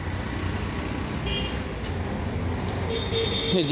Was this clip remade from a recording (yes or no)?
no